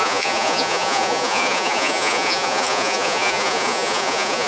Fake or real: fake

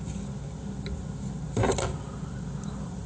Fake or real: real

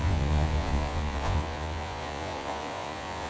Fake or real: fake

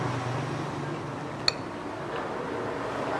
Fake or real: real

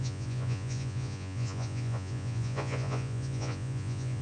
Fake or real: fake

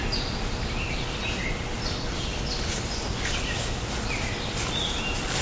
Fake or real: real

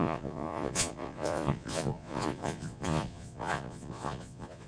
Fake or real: fake